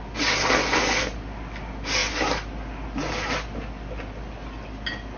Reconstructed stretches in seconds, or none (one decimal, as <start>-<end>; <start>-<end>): none

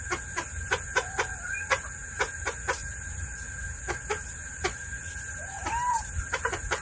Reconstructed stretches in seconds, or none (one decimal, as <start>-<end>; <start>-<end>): 2.0-6.1

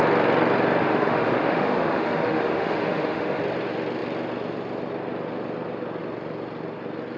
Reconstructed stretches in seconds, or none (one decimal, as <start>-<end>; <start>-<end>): 0.8-3.4

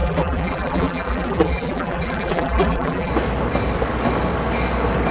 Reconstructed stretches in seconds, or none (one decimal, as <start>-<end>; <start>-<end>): 0.0-3.1

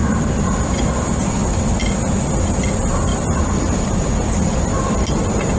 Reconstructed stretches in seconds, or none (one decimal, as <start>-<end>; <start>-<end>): 3.1-5.6

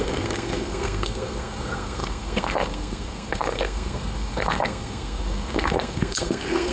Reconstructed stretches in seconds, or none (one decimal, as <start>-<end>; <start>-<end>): 0.0-6.7